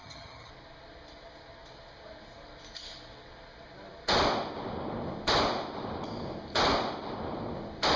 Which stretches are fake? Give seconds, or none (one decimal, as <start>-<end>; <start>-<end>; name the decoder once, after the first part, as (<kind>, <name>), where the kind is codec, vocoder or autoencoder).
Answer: 0.0-0.5 (vocoder, HiFi-GAN)